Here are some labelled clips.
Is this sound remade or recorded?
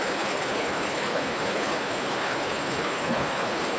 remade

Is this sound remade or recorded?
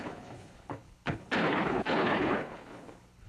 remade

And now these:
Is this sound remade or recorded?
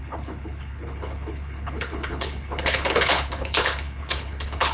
remade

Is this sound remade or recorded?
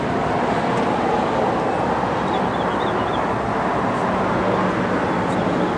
recorded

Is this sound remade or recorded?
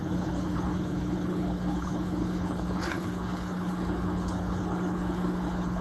remade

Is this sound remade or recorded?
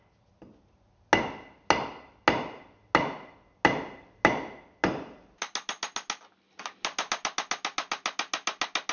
recorded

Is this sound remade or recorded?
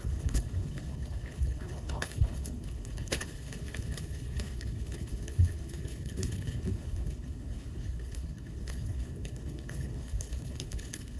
remade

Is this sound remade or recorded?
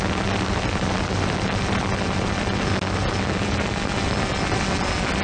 recorded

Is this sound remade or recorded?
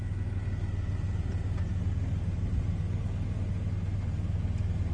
recorded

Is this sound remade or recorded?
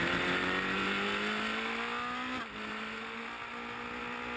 recorded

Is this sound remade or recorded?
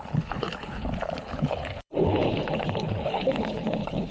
remade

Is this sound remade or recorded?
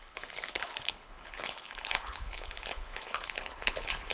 remade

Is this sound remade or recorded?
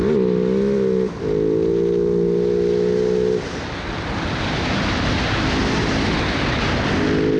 recorded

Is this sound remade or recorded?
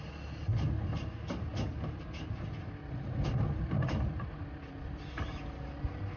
recorded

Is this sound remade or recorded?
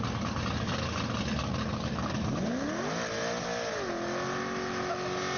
recorded